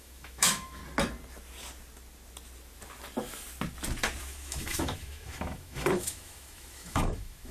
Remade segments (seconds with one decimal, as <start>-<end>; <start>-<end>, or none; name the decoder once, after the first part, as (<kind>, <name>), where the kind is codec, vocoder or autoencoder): 0.0-0.8 (autoencoder, DAC-VAE); 4.2-7.5